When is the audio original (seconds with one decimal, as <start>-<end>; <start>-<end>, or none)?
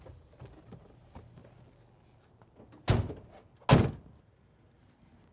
1.4-4.6